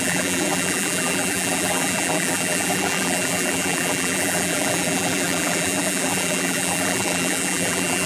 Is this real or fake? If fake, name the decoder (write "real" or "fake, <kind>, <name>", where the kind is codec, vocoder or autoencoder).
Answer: fake, vocoder, BigVGAN v2